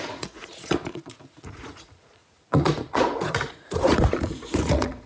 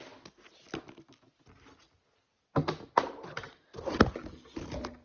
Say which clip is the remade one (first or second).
first